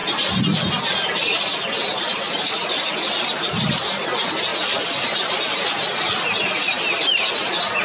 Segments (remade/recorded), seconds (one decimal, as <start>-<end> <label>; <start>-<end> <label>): 0.0-7.8 recorded